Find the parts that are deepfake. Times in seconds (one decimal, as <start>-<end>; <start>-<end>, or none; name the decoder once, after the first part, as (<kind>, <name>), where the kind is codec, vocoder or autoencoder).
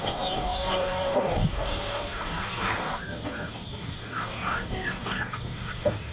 0.0-6.1 (codec, DAC)